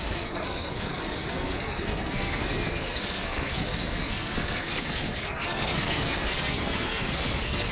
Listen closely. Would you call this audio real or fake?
fake